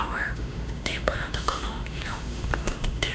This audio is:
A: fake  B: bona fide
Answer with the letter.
A